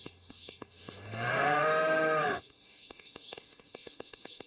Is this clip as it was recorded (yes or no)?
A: no